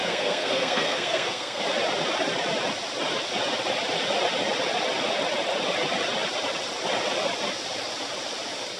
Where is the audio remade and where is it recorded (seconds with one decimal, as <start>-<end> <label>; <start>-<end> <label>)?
0.0-1.6 remade; 1.6-8.8 recorded